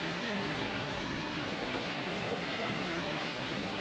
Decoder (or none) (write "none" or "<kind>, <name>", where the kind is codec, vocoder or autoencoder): codec, SNAC